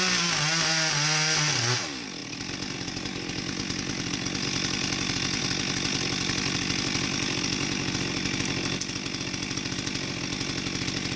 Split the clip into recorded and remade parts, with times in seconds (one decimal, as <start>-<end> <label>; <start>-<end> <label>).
0.0-11.2 recorded